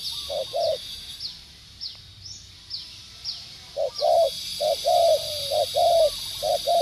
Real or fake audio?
real